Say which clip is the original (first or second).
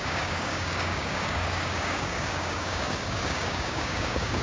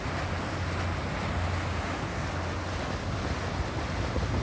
second